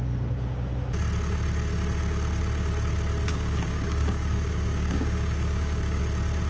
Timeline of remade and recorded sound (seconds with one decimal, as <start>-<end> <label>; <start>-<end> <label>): 0.0-3.3 recorded; 3.3-6.0 remade; 6.0-6.5 recorded